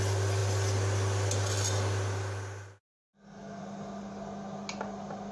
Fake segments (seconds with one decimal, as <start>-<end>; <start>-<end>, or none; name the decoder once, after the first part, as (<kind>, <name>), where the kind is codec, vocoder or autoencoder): none